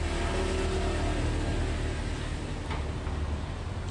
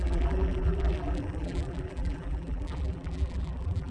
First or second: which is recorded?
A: first